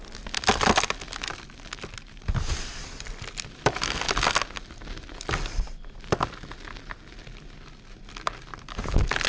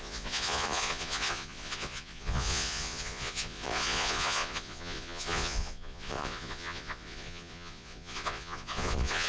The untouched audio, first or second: first